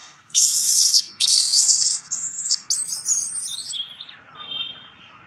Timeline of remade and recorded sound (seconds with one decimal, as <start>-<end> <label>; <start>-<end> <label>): 0.0-2.7 remade; 2.7-5.3 recorded